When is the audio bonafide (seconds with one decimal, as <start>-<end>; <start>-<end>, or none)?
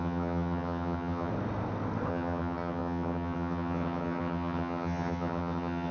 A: 1.3-2.1